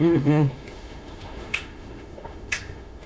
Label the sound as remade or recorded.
remade